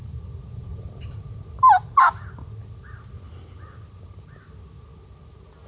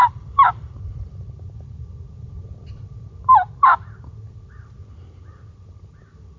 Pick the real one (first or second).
first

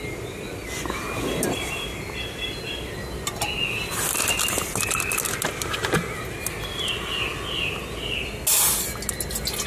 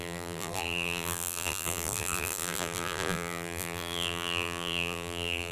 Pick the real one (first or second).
first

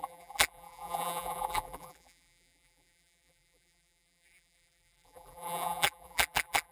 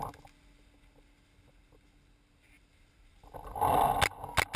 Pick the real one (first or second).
second